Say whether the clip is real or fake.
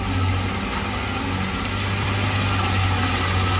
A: real